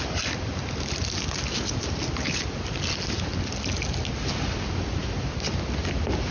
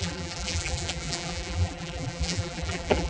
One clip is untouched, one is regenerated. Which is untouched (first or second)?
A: first